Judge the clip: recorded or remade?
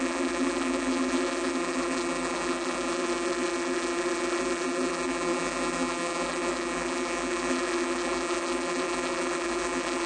remade